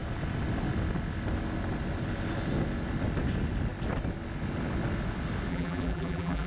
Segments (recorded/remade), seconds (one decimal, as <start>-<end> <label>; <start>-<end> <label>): 0.0-5.5 recorded; 5.5-6.5 remade